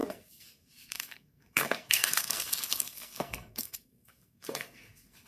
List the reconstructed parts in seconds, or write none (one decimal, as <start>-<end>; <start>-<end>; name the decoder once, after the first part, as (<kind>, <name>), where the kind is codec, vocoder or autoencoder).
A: 0.0-5.3 (codec, SNAC)